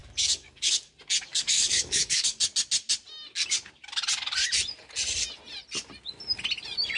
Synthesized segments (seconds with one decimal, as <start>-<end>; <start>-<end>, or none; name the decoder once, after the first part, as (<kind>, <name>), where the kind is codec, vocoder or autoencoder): 0.0-0.9 (codec, DAC); 1.3-2.4